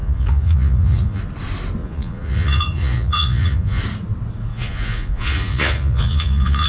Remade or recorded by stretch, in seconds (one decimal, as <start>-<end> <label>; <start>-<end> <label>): 0.0-1.2 remade; 1.2-1.8 recorded; 1.8-3.8 remade; 3.8-4.5 recorded; 4.5-6.7 remade